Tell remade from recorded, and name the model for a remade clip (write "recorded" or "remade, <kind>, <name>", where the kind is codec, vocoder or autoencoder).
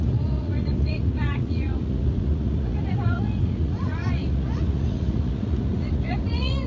remade, vocoder, Vocos